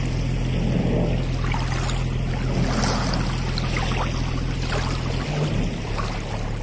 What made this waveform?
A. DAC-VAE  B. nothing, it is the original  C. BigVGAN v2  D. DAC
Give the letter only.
B